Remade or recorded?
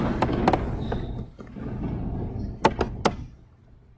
recorded